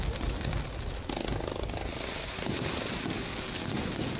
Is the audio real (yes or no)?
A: yes